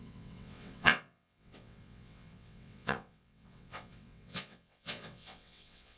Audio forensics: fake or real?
fake